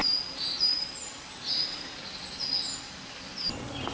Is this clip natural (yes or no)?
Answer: yes